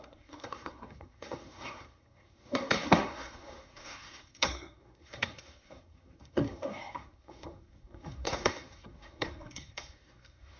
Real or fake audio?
fake